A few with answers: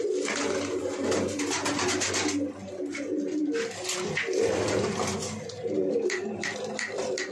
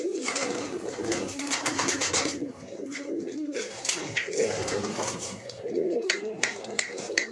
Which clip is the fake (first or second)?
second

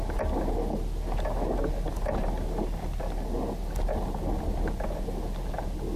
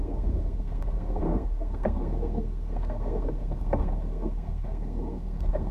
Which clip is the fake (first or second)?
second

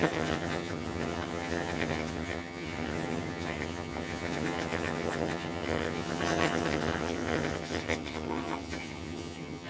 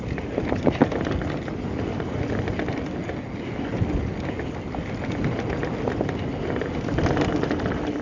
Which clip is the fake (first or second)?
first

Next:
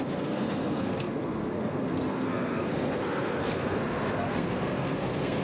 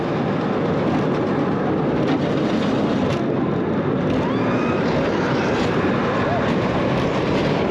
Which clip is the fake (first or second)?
first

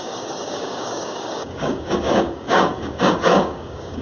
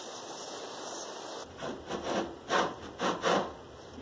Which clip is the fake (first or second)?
first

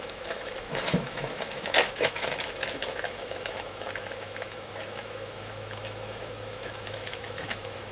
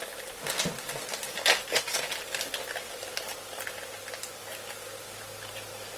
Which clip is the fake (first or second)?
first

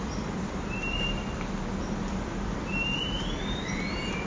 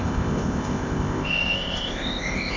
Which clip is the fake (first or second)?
second